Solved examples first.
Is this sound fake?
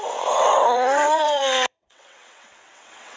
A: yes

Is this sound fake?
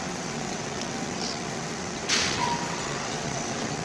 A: yes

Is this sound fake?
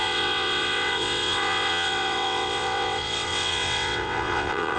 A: yes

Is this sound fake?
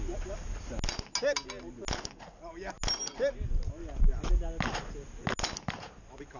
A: no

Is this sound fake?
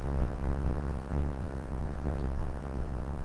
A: yes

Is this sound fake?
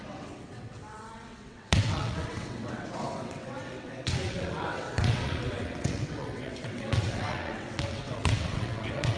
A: yes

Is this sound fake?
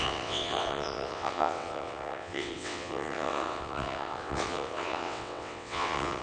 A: yes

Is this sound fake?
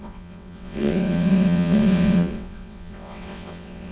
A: yes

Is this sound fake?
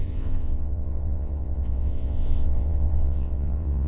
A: yes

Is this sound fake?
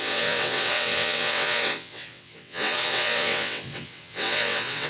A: yes